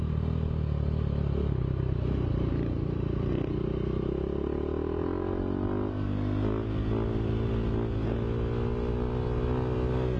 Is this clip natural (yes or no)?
yes